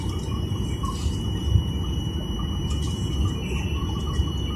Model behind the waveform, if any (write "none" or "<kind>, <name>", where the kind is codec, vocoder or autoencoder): none